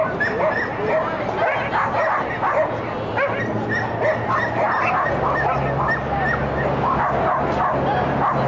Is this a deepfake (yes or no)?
no